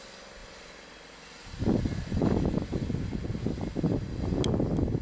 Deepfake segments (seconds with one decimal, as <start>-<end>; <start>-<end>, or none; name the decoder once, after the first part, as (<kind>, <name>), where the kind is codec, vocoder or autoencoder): none